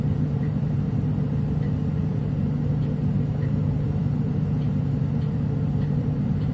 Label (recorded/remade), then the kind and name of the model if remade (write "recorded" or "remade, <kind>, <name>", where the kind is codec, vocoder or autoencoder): remade, vocoder, BigVGAN v2